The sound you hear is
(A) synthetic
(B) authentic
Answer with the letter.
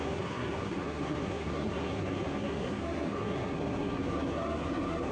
A